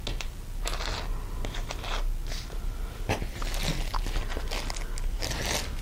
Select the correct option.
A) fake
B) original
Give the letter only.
B